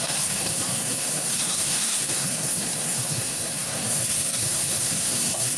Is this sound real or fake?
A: fake